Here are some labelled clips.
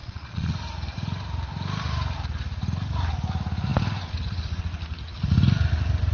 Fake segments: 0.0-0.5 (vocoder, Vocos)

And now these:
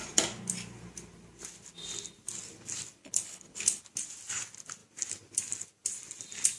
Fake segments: 3.0-3.8 (codec, HILCodec)

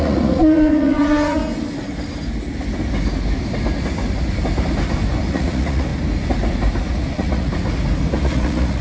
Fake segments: 0.0-1.4 (vocoder, Vocos); 5.3-5.9; 7.1-7.5; 8.2-8.8